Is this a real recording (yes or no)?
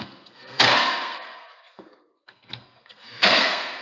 no